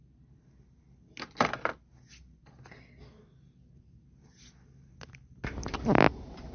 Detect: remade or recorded recorded